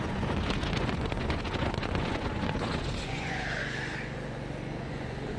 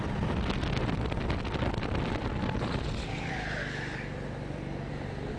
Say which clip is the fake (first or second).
first